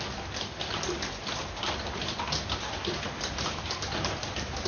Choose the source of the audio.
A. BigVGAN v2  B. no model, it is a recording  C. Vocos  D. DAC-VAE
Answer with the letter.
B